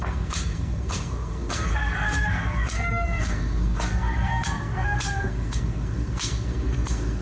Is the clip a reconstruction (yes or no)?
yes